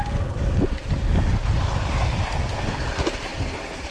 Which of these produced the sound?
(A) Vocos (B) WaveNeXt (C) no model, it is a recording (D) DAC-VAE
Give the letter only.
C